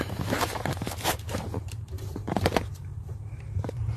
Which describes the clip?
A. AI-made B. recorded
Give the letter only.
A